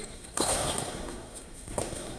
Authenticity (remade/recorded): remade